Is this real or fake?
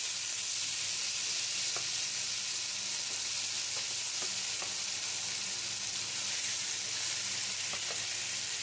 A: real